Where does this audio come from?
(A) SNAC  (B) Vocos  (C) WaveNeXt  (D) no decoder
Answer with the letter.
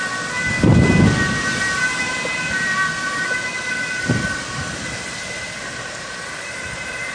D